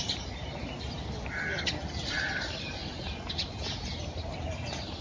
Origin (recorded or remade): remade